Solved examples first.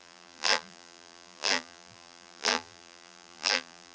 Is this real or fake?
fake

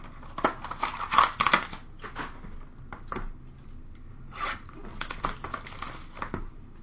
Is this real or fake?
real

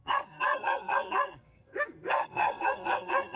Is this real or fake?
fake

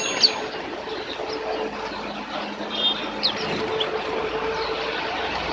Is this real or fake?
real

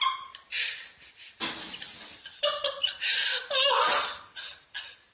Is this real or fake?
real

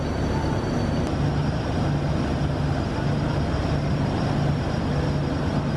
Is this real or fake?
real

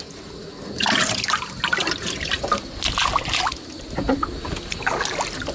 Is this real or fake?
real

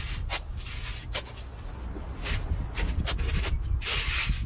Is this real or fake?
real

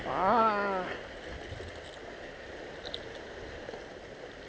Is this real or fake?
real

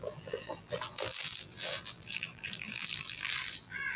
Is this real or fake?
fake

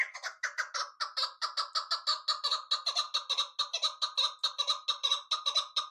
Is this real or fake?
real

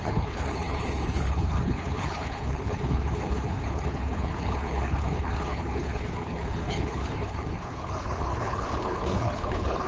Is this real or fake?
fake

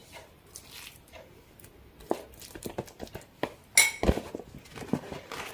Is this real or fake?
real